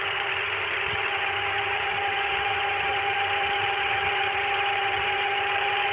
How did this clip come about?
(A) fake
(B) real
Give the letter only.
A